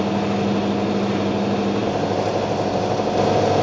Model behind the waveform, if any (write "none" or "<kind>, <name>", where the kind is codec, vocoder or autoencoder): none